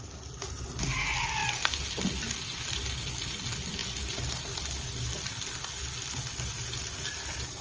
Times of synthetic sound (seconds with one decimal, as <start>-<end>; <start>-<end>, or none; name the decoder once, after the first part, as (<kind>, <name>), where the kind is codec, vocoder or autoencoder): none